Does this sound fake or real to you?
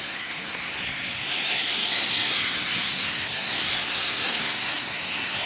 fake